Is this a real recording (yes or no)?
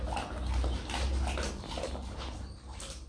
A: yes